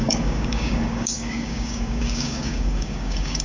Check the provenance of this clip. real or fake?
fake